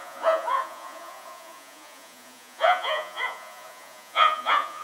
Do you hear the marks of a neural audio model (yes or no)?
yes